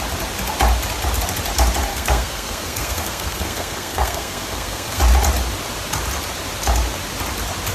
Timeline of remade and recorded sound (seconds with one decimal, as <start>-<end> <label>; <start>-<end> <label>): 0.0-1.9 recorded; 1.9-5.0 remade; 5.0-7.7 recorded

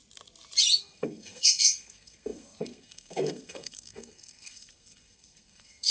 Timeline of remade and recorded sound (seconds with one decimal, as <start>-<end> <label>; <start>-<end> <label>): 0.0-0.8 recorded; 0.8-5.9 remade

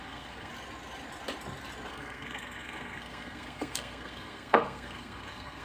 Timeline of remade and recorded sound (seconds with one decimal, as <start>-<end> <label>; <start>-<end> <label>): 0.0-0.5 remade; 0.5-1.9 recorded; 1.9-5.6 remade

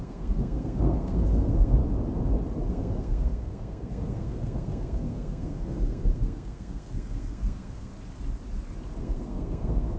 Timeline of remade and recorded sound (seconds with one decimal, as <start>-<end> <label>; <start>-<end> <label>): 0.0-1.8 remade; 1.8-2.7 recorded; 2.7-7.9 remade; 7.9-9.0 recorded; 9.0-10.0 remade

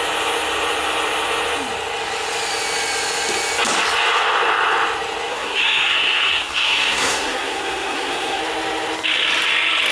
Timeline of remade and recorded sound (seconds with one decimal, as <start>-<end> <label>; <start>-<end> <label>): 0.0-5.3 recorded; 5.3-8.4 remade; 8.4-9.9 recorded

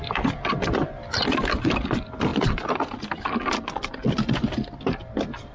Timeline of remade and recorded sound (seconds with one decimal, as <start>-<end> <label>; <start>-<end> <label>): 0.0-5.5 recorded

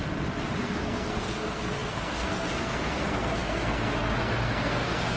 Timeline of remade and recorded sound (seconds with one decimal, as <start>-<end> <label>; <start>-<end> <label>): 0.0-0.6 recorded; 0.6-5.2 remade

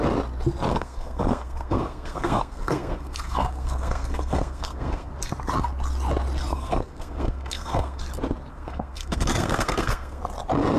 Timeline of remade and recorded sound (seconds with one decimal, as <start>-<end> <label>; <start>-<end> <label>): 0.0-0.7 recorded; 0.7-5.1 remade; 5.1-6.5 recorded; 6.5-8.0 remade; 8.0-8.5 recorded; 8.5-10.2 remade; 10.2-10.8 recorded